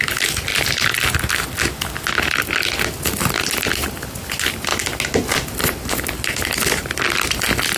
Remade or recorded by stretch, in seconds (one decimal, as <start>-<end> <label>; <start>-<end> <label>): 0.0-0.5 recorded; 0.5-1.1 remade; 1.1-7.8 recorded